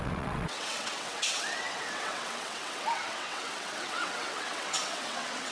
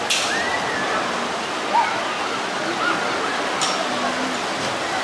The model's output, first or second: first